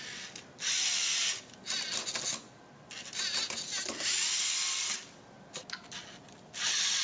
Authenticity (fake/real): real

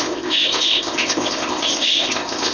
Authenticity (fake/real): fake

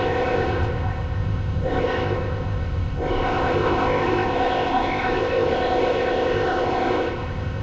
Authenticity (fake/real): fake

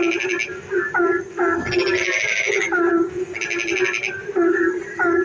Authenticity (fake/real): real